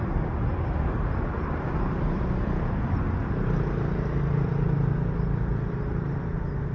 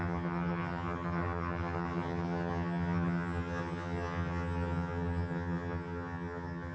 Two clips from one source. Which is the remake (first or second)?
second